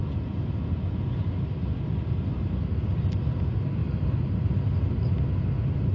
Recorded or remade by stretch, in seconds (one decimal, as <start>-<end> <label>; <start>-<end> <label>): 0.0-5.9 recorded